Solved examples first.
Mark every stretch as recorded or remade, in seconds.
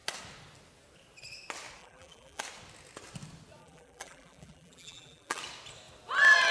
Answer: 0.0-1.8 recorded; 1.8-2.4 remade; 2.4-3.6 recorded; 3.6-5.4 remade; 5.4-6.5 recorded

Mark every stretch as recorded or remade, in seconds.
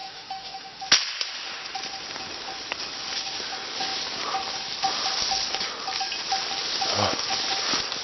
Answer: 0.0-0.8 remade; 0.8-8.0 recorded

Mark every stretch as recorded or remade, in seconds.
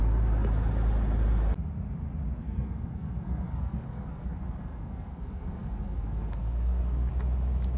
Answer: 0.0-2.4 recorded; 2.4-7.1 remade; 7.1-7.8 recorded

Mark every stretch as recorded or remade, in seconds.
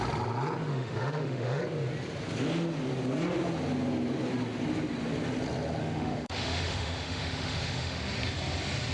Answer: 0.0-0.7 recorded; 0.7-1.6 remade; 1.6-5.8 recorded; 5.8-8.0 remade; 8.0-8.9 recorded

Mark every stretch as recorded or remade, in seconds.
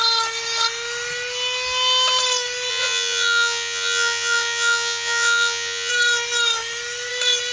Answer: 0.0-2.7 recorded; 2.7-5.9 remade; 5.9-7.5 recorded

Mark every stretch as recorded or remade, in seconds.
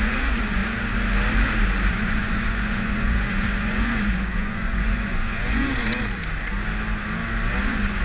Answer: 0.0-0.6 remade; 0.6-1.9 recorded; 1.9-5.7 remade; 5.7-7.6 recorded; 7.6-8.0 remade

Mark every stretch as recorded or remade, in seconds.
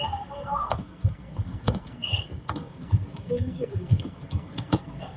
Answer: 0.0-5.2 remade